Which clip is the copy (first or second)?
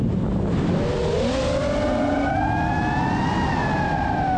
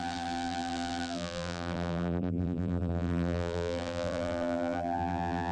second